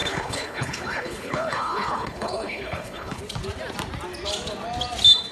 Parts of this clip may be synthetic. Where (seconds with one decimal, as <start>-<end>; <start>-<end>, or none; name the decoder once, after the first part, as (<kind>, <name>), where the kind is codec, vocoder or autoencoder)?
0.0-3.2 (codec, HILCodec)